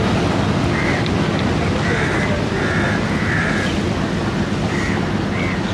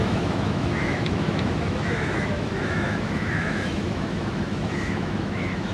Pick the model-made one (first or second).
second